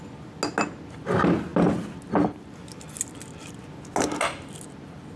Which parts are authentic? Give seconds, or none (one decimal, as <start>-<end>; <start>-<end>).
0.0-5.2